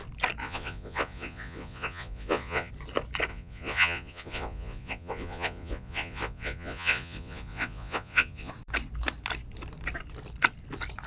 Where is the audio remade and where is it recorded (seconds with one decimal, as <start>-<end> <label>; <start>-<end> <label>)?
0.0-0.4 recorded; 0.4-2.7 remade; 2.7-3.3 recorded; 3.3-8.5 remade; 8.5-11.1 recorded